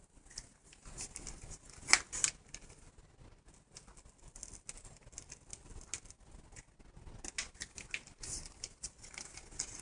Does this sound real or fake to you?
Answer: real